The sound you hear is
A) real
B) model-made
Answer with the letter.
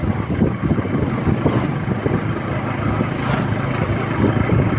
A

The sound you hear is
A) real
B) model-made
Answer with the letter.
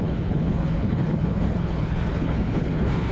B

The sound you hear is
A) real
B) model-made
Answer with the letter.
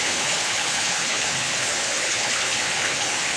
B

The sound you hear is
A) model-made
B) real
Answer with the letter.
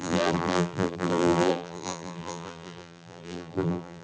A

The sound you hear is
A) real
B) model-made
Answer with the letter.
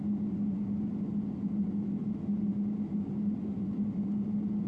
A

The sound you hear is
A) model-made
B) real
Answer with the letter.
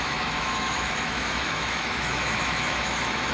A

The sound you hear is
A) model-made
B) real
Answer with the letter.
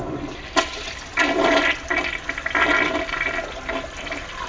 B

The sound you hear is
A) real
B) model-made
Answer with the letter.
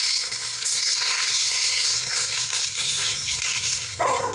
B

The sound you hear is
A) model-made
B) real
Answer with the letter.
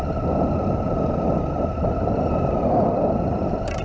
B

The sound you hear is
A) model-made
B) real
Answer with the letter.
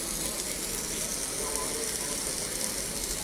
B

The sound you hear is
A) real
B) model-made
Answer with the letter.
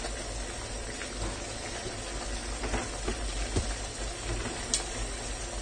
A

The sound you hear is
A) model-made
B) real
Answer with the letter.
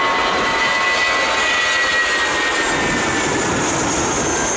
B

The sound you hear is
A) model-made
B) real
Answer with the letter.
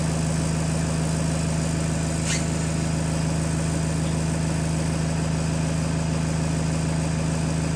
B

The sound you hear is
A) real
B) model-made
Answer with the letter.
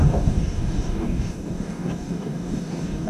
B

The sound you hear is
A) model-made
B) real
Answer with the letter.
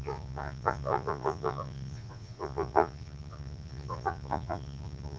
A